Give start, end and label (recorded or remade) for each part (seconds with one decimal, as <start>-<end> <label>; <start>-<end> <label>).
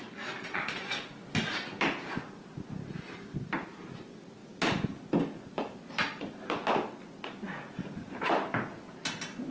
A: 0.0-0.4 recorded; 0.4-1.1 remade; 1.1-9.5 recorded